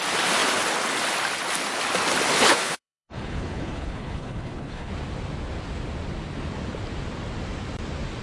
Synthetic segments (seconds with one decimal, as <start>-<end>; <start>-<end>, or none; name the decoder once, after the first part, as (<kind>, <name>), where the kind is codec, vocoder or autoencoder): 2.4-4.9 (codec, HILCodec)